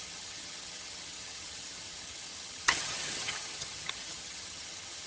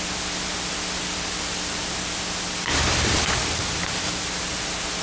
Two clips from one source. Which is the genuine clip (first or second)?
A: second